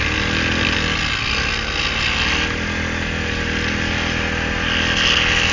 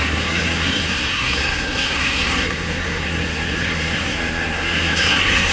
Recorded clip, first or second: first